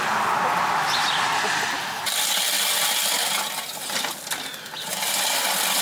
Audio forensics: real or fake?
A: real